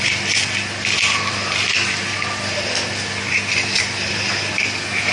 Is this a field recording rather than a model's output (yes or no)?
yes